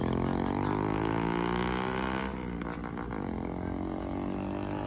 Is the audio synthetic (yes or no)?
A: no